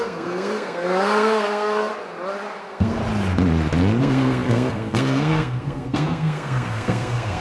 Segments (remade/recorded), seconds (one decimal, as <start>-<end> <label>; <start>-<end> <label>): 0.0-1.9 remade; 1.9-2.6 recorded; 2.6-3.0 remade; 3.0-4.0 recorded; 4.0-7.4 remade